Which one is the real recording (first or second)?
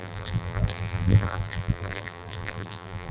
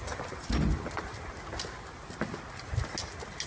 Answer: second